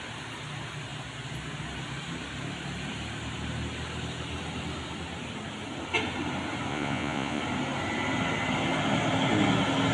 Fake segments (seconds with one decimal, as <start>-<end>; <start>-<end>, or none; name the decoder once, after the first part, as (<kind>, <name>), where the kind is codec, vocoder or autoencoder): 6.7-7.4 (vocoder, Vocos)